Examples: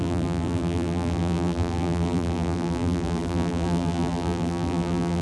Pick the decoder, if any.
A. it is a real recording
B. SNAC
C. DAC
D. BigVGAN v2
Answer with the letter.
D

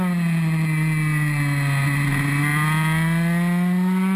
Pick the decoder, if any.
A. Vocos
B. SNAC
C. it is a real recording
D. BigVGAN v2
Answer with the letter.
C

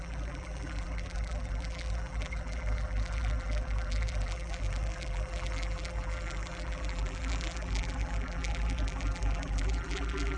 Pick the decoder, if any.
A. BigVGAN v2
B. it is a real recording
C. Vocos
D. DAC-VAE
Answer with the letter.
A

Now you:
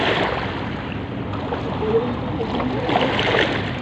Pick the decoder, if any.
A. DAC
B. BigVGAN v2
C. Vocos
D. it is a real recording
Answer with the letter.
D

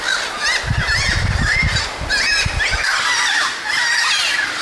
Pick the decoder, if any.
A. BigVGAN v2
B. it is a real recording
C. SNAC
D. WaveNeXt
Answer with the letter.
B